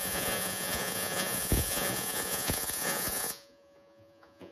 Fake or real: fake